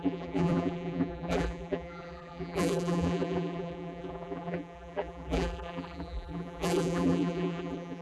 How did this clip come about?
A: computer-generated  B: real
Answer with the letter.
A